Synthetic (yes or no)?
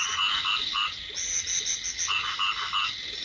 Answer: no